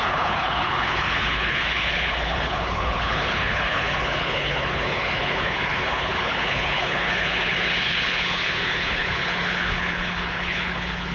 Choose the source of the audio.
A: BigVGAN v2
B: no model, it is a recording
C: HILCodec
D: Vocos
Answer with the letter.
C